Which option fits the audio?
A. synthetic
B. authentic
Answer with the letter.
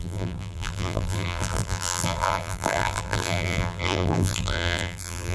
A